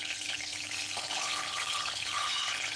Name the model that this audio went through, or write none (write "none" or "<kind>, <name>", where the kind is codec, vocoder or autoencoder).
codec, HILCodec